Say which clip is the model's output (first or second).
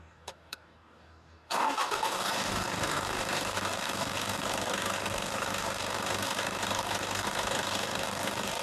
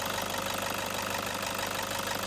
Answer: first